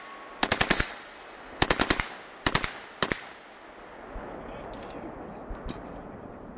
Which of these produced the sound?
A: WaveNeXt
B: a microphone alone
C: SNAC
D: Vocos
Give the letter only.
B